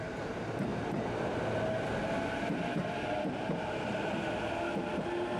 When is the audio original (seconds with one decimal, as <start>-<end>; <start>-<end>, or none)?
0.0-5.4